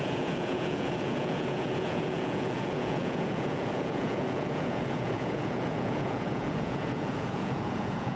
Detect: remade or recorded remade